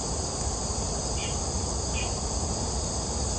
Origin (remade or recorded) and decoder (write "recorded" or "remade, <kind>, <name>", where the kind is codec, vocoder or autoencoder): recorded